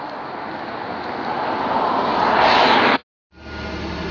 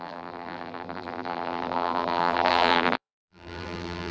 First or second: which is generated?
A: second